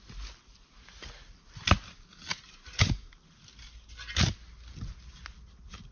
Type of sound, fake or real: real